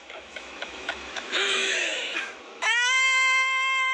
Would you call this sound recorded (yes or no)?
no